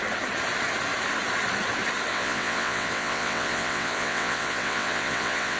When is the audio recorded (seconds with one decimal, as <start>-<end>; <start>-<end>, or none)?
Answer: 0.0-2.1